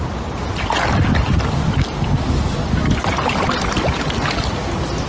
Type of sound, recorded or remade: recorded